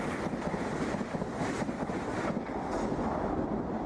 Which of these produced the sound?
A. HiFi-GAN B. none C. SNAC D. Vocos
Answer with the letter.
B